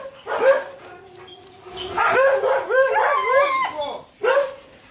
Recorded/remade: recorded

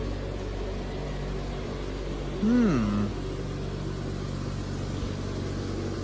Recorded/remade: recorded